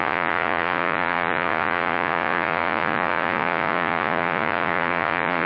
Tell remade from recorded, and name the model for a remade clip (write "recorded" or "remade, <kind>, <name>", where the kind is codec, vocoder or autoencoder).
remade, vocoder, Vocos